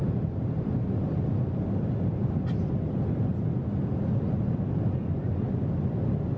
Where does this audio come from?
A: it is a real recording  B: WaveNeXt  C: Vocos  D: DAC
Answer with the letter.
A